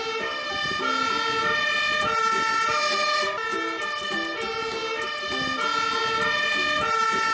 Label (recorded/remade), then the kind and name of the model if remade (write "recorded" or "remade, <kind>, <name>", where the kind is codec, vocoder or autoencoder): recorded